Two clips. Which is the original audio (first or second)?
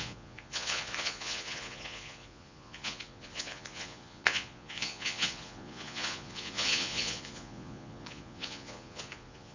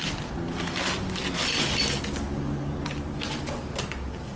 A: second